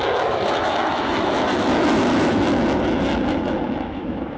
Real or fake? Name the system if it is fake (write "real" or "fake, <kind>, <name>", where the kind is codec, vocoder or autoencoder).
fake, autoencoder, DAC-VAE